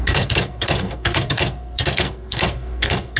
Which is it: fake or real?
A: fake